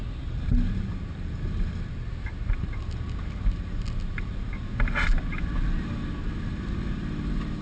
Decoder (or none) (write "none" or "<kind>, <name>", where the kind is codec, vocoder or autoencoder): none